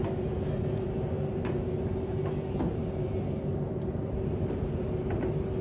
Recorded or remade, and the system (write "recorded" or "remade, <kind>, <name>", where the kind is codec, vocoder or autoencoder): recorded